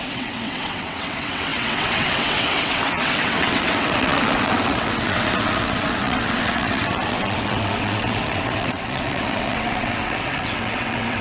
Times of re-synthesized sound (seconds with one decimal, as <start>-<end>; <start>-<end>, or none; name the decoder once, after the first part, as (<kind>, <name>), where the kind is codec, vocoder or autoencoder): 0.0-11.2 (vocoder, WaveNeXt)